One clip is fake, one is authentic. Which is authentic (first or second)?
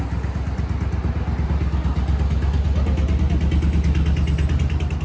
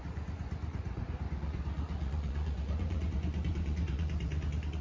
first